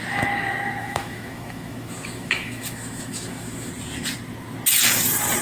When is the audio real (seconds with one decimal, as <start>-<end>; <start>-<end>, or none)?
0.0-0.8; 3.7-5.4